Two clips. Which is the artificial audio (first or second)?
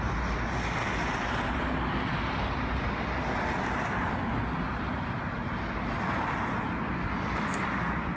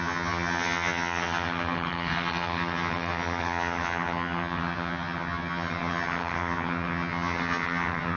second